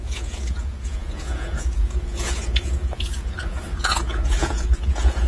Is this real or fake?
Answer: fake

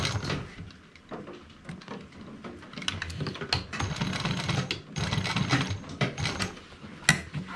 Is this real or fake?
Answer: real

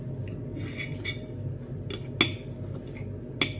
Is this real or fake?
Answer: real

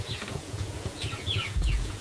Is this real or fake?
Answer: fake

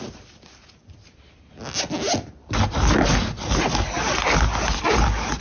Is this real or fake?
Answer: real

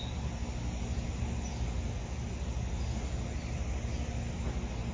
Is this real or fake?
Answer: real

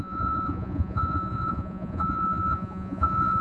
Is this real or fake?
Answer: fake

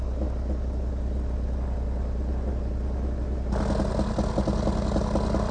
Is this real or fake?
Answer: real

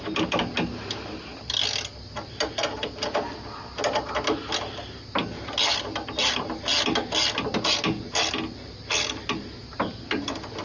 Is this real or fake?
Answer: real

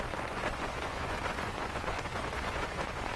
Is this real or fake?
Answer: fake